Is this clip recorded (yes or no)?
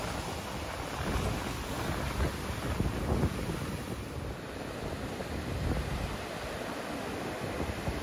yes